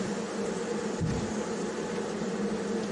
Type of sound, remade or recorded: recorded